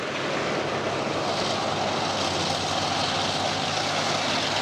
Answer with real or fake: real